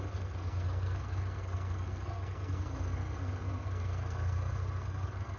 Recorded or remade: remade